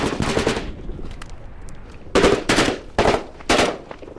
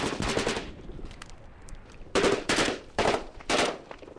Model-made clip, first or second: second